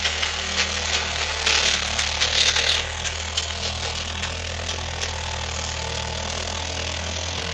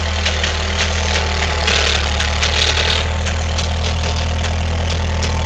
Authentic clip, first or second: second